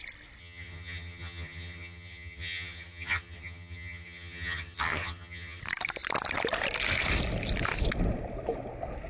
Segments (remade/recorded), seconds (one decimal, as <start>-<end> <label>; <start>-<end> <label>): 0.0-0.4 recorded; 0.4-5.6 remade; 5.6-9.1 recorded